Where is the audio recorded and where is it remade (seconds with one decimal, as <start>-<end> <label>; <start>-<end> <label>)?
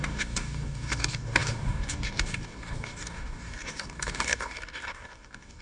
0.0-5.6 remade